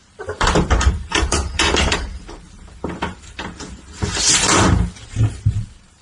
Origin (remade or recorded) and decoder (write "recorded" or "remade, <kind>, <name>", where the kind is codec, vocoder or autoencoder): remade, vocoder, BigVGAN v2